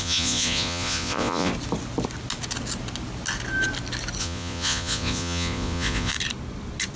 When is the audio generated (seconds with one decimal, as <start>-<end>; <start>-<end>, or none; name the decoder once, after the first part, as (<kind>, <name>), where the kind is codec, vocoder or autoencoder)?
0.0-1.5 (vocoder, Vocos); 4.2-6.1